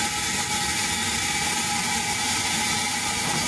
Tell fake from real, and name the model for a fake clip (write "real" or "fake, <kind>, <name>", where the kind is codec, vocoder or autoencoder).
real